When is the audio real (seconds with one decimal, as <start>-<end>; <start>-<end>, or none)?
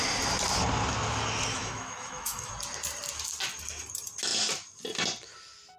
0.0-1.5; 2.5-5.8